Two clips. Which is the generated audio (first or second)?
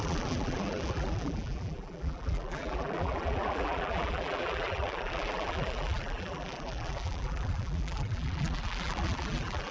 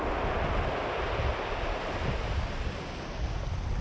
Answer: first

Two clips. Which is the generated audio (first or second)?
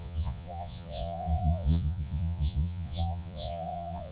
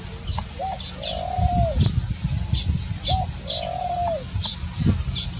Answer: first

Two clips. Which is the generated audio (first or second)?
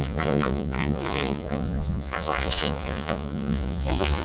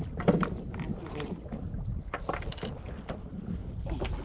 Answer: first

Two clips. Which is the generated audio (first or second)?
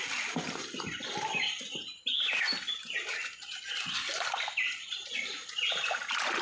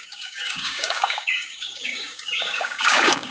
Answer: second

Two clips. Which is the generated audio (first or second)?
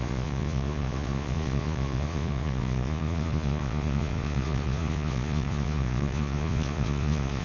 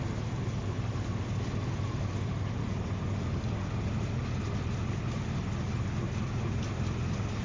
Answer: first